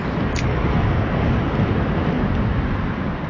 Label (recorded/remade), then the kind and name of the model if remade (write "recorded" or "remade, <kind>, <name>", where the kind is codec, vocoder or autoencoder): recorded